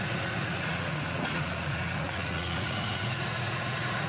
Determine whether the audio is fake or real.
fake